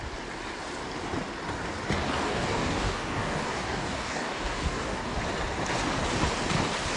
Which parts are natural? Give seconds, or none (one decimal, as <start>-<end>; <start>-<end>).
0.0-2.2; 5.1-7.0